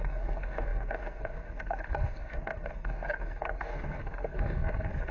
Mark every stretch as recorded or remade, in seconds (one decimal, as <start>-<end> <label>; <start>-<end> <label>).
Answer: 0.0-5.1 remade

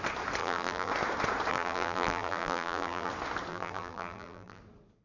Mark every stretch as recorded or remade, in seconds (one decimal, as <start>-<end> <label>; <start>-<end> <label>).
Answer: 0.0-0.4 recorded; 0.4-0.9 remade; 0.9-1.5 recorded; 1.5-3.1 remade; 3.1-3.5 recorded; 3.5-4.6 remade; 4.6-5.0 recorded

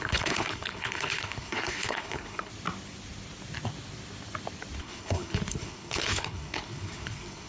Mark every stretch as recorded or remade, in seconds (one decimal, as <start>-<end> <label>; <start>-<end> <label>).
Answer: 0.0-2.5 remade; 2.5-4.8 recorded; 4.8-7.5 remade

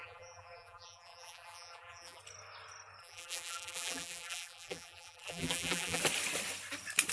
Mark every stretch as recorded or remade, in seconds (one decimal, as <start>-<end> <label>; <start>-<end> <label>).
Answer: 0.0-2.2 remade; 2.2-3.0 recorded; 3.0-6.0 remade; 6.0-7.1 recorded